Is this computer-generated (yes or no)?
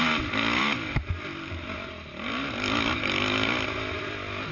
no